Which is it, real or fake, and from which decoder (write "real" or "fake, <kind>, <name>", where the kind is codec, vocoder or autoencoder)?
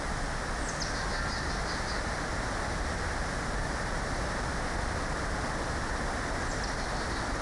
real